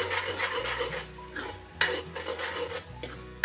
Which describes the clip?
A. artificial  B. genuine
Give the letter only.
B